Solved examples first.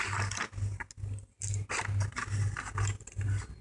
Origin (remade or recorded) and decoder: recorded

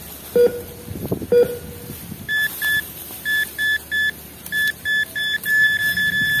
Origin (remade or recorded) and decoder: recorded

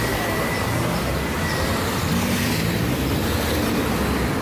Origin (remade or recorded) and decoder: remade, vocoder, BigVGAN v2